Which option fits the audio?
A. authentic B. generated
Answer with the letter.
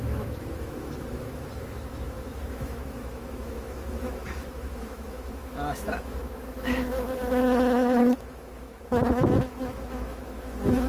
B